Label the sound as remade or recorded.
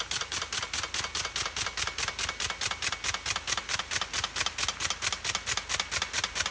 recorded